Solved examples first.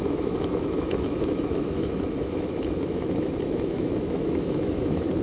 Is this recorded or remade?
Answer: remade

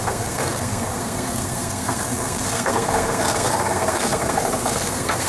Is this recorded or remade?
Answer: remade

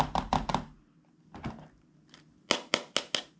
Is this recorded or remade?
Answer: recorded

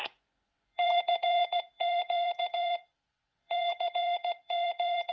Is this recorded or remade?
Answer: remade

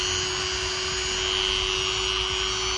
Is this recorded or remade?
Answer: recorded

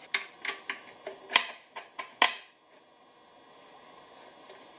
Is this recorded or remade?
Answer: recorded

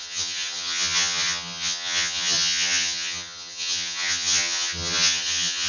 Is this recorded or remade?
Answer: remade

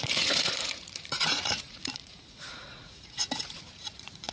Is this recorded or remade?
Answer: remade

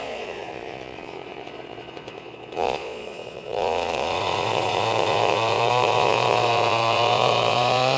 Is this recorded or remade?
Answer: remade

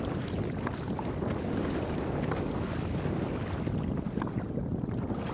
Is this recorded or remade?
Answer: recorded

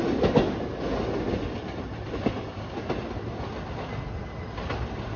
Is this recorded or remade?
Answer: recorded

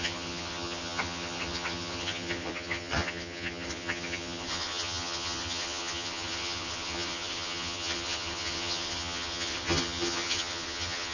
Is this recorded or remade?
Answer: remade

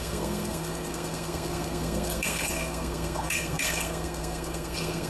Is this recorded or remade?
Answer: remade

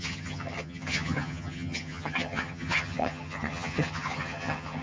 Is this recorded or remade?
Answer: remade